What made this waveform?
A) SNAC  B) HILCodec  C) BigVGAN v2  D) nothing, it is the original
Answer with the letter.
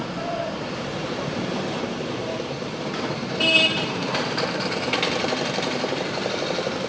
C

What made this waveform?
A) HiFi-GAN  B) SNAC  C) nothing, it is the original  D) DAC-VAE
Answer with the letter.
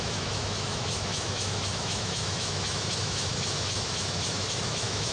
D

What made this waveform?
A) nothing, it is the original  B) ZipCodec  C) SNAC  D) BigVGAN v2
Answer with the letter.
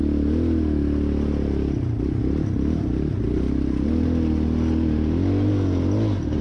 A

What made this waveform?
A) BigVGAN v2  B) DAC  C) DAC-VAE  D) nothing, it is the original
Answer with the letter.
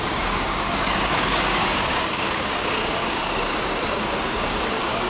B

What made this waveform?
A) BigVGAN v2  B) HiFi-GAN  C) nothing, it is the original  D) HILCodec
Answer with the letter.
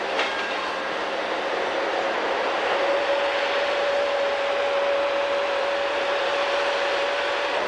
A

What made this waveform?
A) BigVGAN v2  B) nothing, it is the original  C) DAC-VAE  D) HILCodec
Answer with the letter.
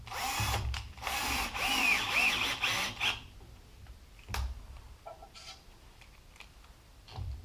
A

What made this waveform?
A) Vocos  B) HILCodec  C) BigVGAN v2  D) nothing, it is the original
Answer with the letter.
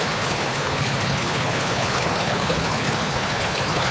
B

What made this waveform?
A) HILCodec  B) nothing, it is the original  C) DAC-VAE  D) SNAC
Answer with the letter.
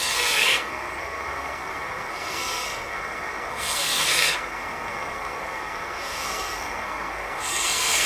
D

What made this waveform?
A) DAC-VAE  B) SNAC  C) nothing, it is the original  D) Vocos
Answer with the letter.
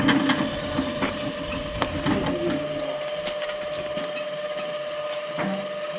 C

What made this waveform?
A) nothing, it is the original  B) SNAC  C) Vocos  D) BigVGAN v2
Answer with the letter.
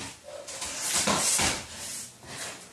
A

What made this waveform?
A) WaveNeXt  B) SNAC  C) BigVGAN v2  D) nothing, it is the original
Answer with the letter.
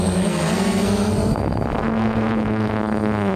B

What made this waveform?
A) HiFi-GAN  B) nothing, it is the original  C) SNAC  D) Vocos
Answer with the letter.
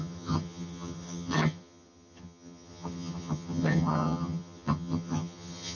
A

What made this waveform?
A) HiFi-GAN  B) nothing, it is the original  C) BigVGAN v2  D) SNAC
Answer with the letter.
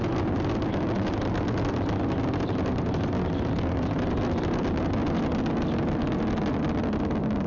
B